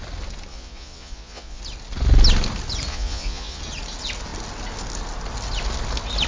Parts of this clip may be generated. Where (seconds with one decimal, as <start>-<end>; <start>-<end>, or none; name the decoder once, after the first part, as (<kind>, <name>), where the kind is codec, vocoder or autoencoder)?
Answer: 0.5-1.6 (vocoder, Vocos); 2.9-3.6